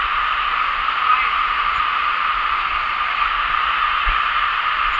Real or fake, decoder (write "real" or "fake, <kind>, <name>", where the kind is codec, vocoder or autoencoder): real